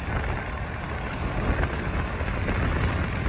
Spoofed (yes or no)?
no